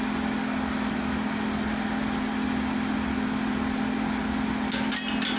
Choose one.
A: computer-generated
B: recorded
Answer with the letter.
B